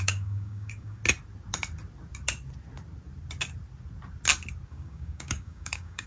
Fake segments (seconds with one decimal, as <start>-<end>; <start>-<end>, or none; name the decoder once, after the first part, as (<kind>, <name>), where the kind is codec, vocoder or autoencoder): 0.0-1.0 (codec, DAC); 4.7-6.1